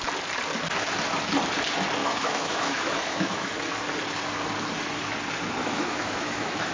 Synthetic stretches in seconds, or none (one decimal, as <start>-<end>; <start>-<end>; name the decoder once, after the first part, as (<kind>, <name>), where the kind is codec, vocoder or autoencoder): 2.0-3.5 (autoencoder, DAC-VAE); 5.6-6.7